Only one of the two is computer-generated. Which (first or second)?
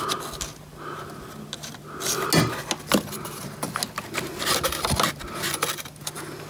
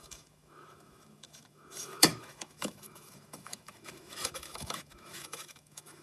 second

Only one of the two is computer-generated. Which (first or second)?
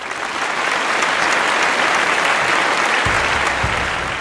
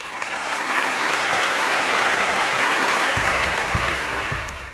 second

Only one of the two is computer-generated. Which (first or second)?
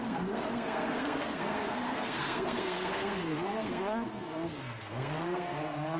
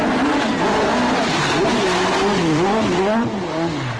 first